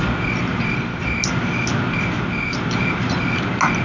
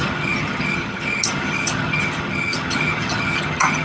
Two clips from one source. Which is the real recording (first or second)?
first